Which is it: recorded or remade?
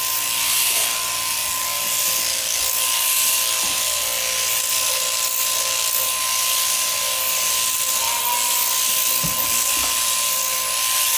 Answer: recorded